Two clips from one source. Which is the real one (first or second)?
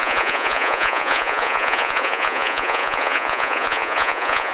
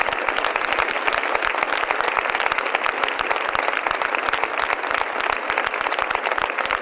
second